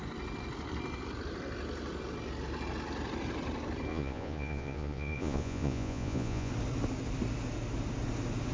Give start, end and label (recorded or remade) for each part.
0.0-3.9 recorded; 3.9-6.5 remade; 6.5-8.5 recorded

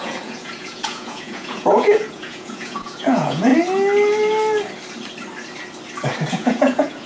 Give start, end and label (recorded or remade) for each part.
0.0-3.5 remade; 3.5-6.3 recorded; 6.3-7.1 remade

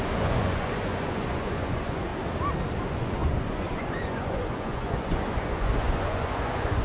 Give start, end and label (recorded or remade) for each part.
0.0-2.1 remade; 2.1-2.8 recorded; 2.8-6.8 remade

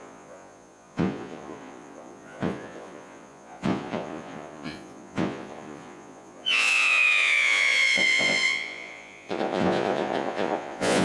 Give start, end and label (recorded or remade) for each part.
0.0-11.0 remade

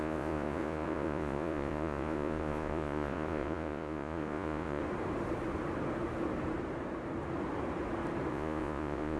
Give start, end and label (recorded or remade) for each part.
0.0-4.8 remade; 4.8-8.3 recorded; 8.3-9.2 remade

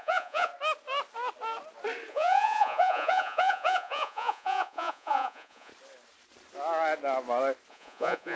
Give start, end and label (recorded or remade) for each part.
0.0-0.5 remade; 0.5-2.1 recorded; 2.1-5.7 remade; 5.7-7.7 recorded; 7.7-8.4 remade

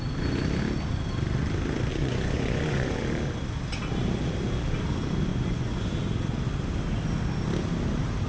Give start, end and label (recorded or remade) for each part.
0.0-1.9 recorded; 1.9-3.0 remade; 3.0-5.3 recorded; 5.3-5.9 remade; 5.9-8.3 recorded